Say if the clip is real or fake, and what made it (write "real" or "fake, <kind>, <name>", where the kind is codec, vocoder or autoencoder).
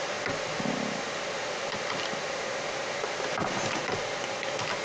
real